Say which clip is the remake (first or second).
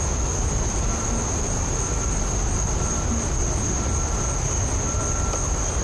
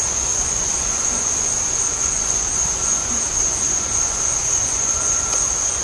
second